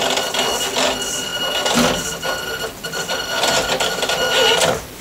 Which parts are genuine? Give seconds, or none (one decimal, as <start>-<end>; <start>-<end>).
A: 0.0-5.0